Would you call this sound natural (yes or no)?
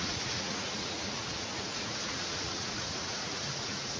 no